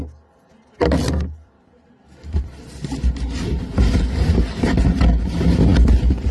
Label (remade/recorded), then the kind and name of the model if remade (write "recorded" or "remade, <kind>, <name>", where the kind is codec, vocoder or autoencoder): recorded